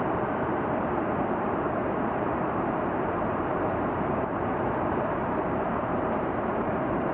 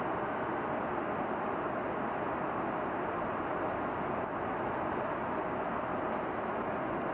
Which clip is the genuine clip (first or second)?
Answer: second